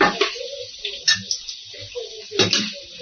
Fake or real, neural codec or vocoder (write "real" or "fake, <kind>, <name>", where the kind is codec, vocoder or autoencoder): real